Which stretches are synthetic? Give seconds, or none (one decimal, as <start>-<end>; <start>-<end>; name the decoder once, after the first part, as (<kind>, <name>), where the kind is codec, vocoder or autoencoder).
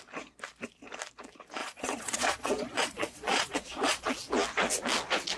1.6-4.1 (vocoder, Vocos)